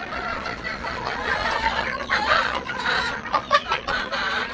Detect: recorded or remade remade